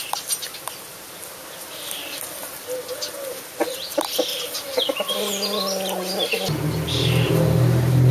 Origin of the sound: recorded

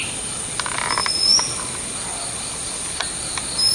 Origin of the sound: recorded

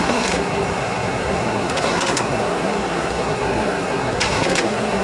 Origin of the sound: remade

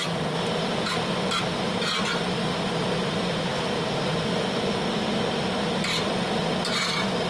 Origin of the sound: recorded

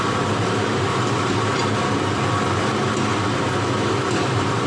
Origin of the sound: recorded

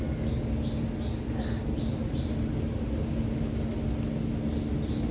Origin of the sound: recorded